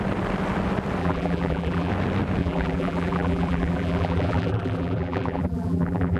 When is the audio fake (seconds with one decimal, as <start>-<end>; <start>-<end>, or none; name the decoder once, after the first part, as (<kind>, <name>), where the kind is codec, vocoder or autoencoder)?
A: 1.0-1.9 (vocoder, BigVGAN v2); 2.4-6.2